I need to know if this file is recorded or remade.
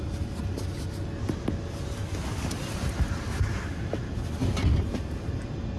recorded